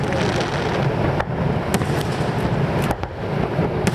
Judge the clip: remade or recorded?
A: recorded